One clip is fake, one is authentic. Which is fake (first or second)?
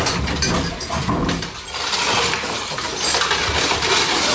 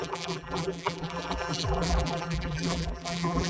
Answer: second